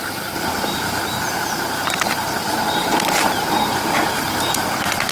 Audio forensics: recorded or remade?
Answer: remade